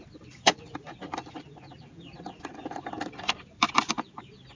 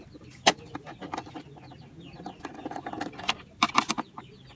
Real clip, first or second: second